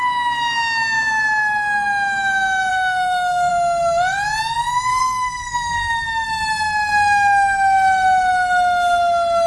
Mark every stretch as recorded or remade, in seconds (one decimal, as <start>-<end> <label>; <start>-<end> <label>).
0.0-2.7 recorded; 2.7-3.5 remade; 3.5-4.9 recorded; 4.9-5.9 remade; 5.9-9.5 recorded